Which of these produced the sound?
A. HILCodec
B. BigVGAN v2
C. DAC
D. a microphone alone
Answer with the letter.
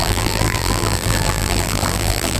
B